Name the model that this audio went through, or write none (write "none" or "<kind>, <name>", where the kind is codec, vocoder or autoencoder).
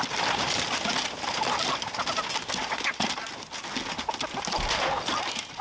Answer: none